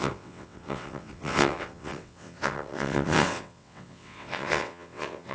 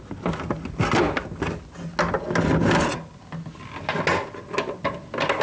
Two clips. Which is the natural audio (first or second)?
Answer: second